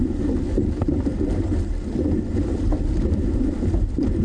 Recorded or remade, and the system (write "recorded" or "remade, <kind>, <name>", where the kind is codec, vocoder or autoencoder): recorded